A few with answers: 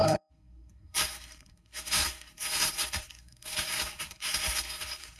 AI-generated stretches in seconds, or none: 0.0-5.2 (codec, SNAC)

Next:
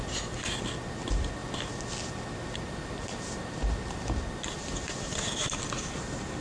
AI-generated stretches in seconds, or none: none

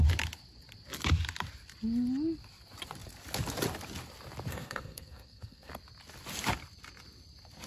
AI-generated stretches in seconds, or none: 4.5-5.7 (codec, SNAC)

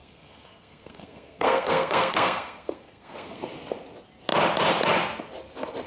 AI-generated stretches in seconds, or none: 0.0-3.4 (codec, SNAC)

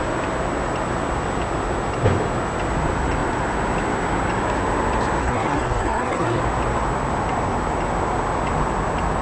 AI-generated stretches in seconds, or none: 5.2-6.4 (codec, SNAC)

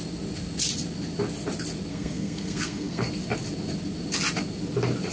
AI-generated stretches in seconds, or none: 1.9-3.1 (codec, SNAC)

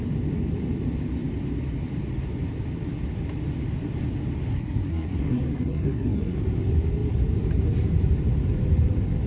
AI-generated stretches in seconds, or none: 4.5-6.4 (codec, SNAC)